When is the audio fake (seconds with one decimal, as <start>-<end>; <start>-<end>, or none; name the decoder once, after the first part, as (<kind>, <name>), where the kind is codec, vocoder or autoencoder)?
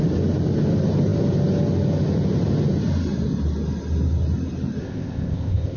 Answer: 4.8-5.8 (codec, ZipCodec)